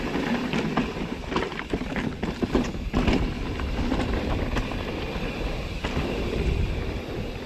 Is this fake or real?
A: fake